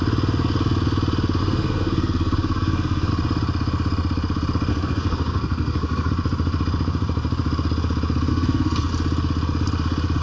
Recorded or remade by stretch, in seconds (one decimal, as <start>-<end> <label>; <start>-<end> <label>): 0.0-1.4 recorded; 1.4-3.1 remade; 3.1-4.7 recorded; 4.7-6.1 remade; 6.1-8.3 recorded; 8.3-8.9 remade; 8.9-10.2 recorded